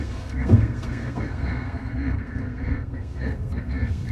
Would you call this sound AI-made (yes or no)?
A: yes